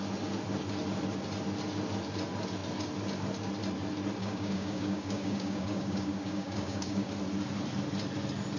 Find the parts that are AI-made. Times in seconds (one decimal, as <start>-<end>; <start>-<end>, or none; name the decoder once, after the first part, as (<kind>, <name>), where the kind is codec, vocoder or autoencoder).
4.2-7.1 (codec, DAC)